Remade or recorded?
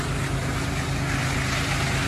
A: recorded